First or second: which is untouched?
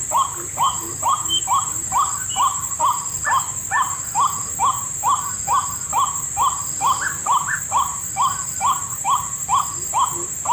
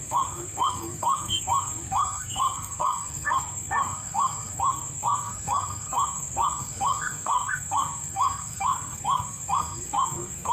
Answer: first